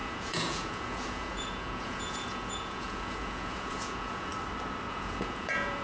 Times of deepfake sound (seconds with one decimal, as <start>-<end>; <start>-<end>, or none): 0.0-4.3; 4.9-5.8